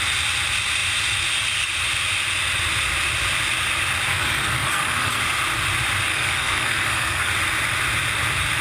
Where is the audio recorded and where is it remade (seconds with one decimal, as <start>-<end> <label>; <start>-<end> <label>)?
0.0-4.1 recorded; 4.1-5.2 remade; 5.2-6.1 recorded; 6.1-7.3 remade; 7.3-8.6 recorded